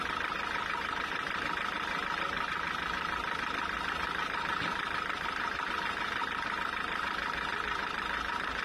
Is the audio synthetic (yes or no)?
no